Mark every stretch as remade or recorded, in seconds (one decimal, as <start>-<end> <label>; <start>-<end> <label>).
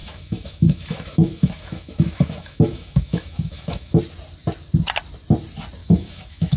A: 0.0-4.0 remade; 4.0-5.8 recorded; 5.8-6.6 remade